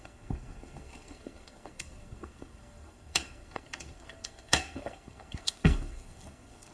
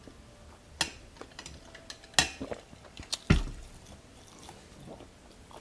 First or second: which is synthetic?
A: first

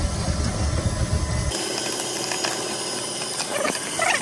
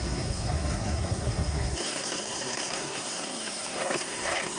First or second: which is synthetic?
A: second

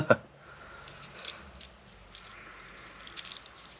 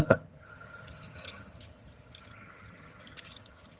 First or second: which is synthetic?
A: second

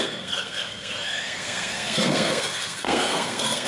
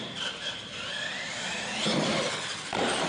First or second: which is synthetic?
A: first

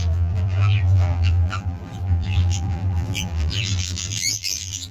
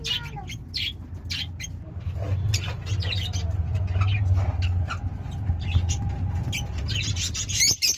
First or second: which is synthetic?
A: first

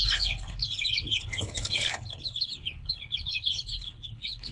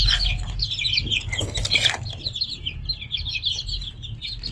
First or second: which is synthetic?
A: first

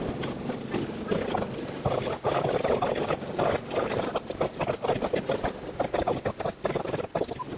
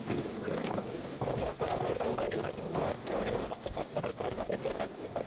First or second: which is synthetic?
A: second